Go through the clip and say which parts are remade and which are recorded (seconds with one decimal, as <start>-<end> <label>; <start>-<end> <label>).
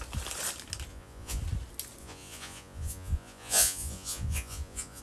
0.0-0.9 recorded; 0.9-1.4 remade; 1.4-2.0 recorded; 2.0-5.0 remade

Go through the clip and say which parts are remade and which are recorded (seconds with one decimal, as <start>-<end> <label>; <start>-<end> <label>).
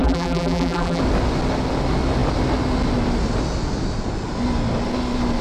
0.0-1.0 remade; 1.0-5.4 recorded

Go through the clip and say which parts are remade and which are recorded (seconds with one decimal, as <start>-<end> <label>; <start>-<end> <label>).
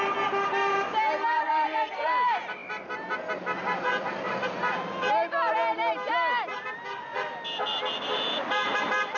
0.0-1.2 recorded; 1.2-2.1 remade; 2.1-9.2 recorded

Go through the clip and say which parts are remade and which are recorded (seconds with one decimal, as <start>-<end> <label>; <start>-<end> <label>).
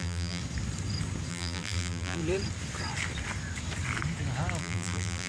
0.0-0.4 remade; 0.4-1.3 recorded; 1.3-2.2 remade; 2.2-4.6 recorded; 4.6-5.3 remade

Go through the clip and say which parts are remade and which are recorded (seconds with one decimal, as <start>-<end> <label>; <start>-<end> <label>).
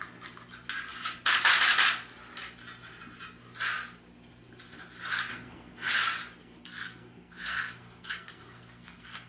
0.0-5.3 recorded; 5.3-5.9 remade; 5.9-6.4 recorded; 6.4-9.3 remade